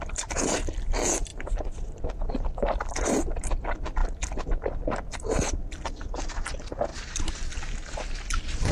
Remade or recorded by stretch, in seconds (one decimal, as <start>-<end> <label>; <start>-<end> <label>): 0.0-8.7 recorded